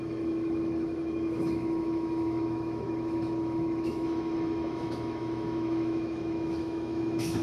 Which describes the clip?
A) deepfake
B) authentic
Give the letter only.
A